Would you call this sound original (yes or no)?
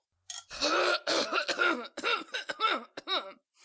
no